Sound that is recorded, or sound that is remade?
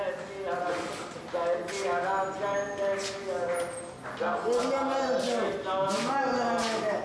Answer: recorded